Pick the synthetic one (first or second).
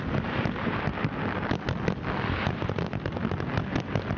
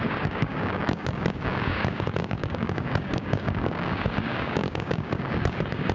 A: second